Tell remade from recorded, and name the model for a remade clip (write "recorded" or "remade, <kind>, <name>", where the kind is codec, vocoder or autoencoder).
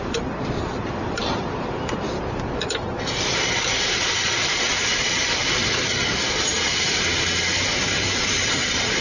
remade, vocoder, BigVGAN v2